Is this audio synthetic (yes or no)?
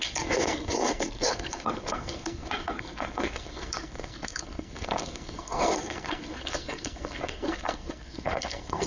yes